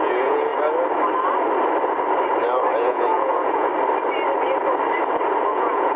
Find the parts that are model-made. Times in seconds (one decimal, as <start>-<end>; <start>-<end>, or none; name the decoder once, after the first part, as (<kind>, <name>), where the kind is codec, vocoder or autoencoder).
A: 0.0-0.5 (vocoder, Vocos); 2.7-3.7; 5.4-6.0